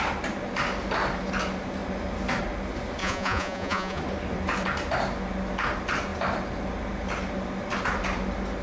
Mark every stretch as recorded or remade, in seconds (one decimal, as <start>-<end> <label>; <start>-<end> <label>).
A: 0.0-3.0 recorded; 3.0-4.0 remade; 4.0-8.6 recorded